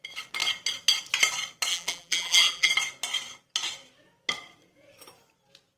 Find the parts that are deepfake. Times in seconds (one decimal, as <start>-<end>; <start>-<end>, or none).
1.7-2.7